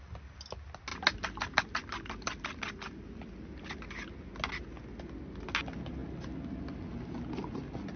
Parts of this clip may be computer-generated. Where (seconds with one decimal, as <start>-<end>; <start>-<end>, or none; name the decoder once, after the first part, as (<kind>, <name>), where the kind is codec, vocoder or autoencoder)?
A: none